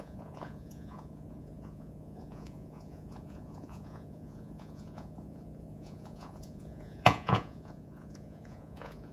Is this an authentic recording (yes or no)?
no